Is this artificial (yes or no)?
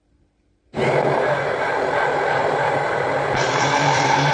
yes